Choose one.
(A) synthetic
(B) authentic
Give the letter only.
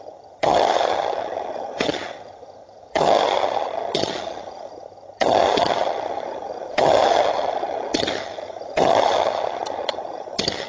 A